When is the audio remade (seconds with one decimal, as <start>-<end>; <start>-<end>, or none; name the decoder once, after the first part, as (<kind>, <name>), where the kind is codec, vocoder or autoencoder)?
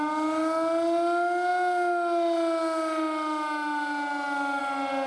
none